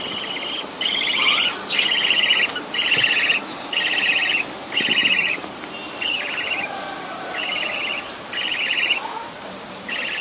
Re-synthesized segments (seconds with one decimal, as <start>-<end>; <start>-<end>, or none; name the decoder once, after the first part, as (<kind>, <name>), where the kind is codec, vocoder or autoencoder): 5.0-7.8 (vocoder, BigVGAN v2)